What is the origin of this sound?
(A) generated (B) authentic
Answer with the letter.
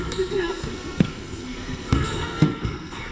A